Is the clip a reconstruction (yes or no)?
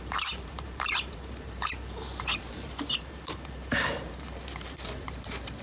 yes